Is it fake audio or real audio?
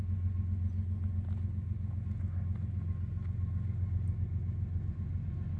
real